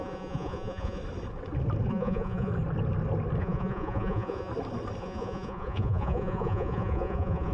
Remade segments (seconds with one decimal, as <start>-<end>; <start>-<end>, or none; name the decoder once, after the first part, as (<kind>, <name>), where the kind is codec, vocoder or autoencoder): 0.0-1.0 (vocoder, Vocos); 1.9-2.5; 3.4-4.5; 5.0-7.5